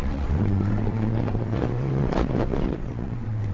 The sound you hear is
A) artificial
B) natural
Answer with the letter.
A